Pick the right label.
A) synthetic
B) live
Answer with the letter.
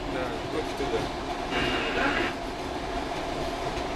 B